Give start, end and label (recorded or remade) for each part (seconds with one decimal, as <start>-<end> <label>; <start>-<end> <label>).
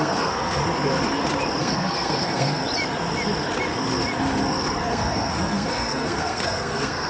0.0-0.6 remade; 0.6-1.6 recorded; 1.6-2.6 remade; 2.6-4.9 recorded; 4.9-7.1 remade